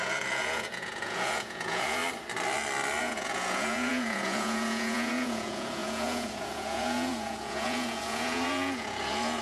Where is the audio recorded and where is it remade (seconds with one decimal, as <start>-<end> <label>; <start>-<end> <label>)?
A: 0.0-2.0 remade; 2.0-3.0 recorded; 3.0-9.4 remade